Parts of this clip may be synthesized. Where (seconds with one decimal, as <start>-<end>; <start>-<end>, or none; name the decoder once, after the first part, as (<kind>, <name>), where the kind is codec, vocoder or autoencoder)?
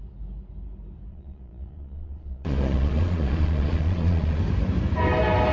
1.1-4.4 (vocoder, Vocos)